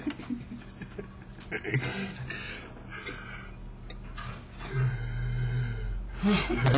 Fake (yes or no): no